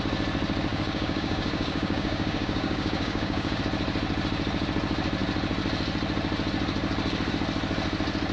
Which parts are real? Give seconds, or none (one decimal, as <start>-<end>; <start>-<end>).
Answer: 0.0-0.7; 3.6-8.3